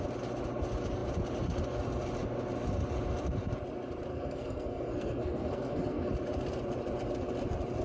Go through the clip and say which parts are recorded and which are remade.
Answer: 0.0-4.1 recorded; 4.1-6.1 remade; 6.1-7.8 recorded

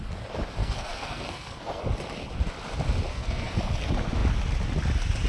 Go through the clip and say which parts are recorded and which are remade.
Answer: 0.0-0.6 recorded; 0.6-1.8 remade; 1.8-3.1 recorded; 3.1-3.6 remade; 3.6-5.3 recorded

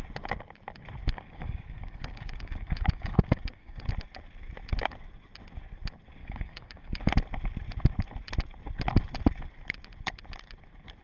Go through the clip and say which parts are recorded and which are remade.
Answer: 0.0-1.0 recorded; 1.0-3.9 remade; 3.9-6.2 recorded; 6.2-7.1 remade; 7.1-11.0 recorded